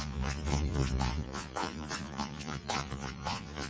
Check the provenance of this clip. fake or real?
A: fake